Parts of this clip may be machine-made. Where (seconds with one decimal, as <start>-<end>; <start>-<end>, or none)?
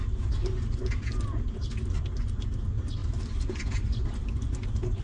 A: none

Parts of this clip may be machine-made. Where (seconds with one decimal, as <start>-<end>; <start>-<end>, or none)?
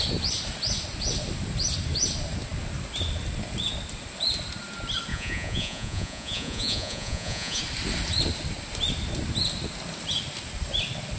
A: 5.1-7.6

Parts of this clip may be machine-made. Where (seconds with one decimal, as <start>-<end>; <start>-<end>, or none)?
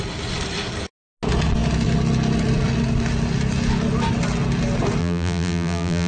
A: 5.0-6.1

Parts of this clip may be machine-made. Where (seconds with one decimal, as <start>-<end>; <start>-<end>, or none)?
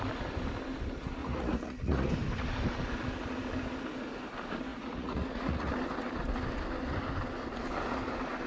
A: 1.2-2.1; 4.7-5.7